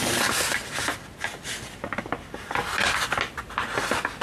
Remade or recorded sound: recorded